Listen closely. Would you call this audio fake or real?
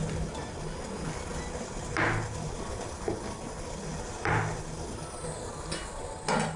real